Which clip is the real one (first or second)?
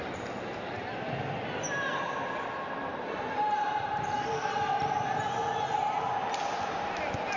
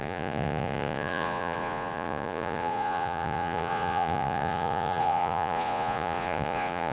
first